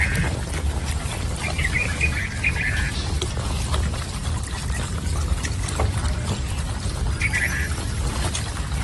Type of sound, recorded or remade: recorded